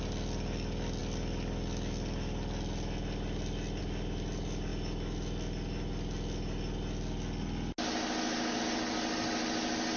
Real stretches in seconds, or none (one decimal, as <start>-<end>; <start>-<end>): 0.0-10.0